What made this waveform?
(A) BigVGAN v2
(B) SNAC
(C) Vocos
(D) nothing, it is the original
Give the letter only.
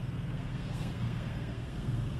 B